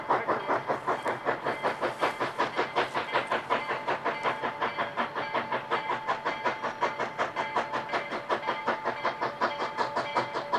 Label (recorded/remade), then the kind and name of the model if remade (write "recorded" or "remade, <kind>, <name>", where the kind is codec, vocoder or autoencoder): recorded